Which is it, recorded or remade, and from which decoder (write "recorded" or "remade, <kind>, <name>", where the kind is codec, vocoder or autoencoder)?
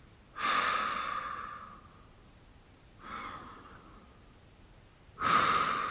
recorded